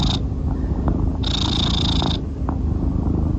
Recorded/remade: recorded